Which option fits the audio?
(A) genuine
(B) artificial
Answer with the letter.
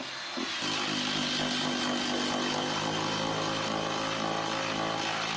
A